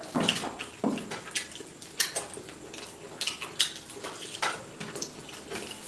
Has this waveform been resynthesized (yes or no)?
no